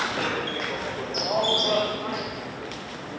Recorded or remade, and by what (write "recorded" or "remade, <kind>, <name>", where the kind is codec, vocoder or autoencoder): recorded